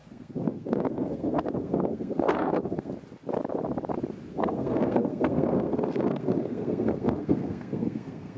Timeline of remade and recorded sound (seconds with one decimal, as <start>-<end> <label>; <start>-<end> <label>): 0.0-2.9 remade; 2.9-4.3 recorded; 4.3-8.4 remade